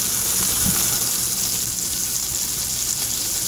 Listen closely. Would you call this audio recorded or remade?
recorded